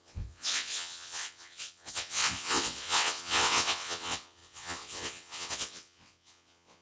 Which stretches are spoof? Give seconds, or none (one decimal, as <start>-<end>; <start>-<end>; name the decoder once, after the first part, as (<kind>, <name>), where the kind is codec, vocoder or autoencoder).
0.0-6.8 (vocoder, WaveNeXt)